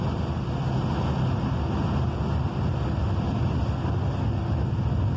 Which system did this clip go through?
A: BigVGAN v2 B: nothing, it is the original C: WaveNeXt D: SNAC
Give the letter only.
B